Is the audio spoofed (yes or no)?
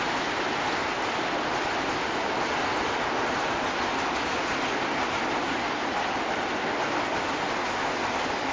no